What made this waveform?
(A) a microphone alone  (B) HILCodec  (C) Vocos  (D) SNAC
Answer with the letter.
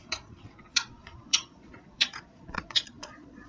C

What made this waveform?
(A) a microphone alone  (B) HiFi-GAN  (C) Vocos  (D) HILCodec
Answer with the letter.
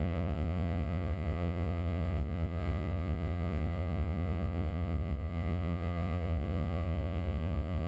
C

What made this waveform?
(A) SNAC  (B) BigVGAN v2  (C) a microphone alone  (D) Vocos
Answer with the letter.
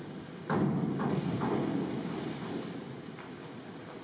C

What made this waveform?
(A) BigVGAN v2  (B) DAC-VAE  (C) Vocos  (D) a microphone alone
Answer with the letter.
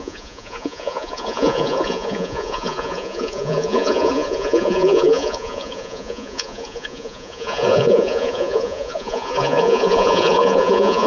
C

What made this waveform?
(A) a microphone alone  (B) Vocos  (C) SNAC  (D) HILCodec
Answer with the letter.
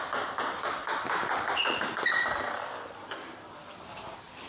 A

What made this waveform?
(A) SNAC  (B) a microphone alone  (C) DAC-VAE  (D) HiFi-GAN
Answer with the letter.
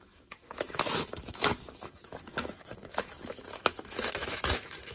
C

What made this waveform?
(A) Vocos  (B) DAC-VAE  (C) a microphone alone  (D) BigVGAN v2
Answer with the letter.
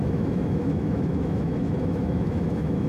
B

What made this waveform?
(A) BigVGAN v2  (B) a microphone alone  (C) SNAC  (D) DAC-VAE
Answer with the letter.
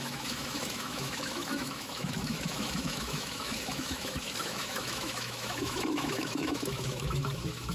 D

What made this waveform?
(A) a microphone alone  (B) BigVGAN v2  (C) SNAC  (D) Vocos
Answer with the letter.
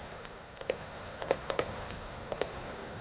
C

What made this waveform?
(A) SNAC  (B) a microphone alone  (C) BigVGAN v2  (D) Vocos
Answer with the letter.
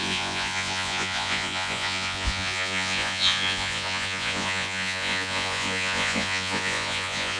D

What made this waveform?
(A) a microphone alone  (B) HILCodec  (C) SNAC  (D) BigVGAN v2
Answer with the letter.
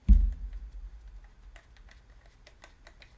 A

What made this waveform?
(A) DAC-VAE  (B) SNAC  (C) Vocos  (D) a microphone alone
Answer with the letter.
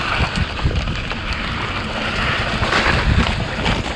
D